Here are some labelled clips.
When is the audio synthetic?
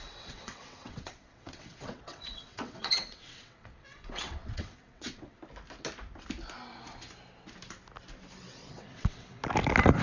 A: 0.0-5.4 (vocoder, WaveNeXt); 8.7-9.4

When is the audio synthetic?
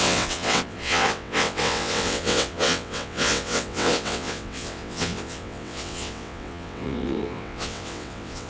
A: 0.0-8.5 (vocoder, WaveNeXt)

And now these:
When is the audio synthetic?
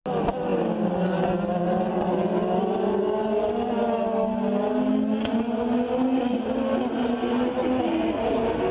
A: none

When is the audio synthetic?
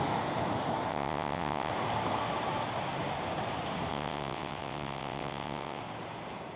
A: 0.9-1.7 (vocoder, WaveNeXt); 3.9-5.8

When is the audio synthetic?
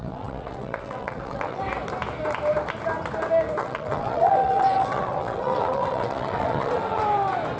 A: 0.0-1.6 (vocoder, WaveNeXt); 3.6-7.0